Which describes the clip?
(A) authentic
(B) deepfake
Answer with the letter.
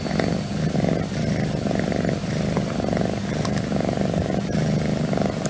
A